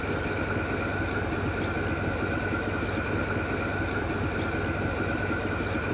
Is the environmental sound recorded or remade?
recorded